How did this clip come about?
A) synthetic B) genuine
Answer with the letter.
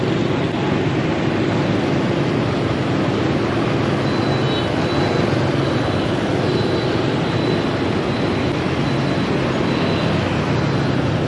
B